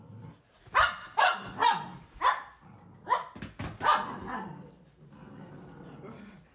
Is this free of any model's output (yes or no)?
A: yes